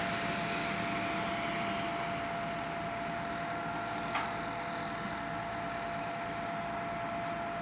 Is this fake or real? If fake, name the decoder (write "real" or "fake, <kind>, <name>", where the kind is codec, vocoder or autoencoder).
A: real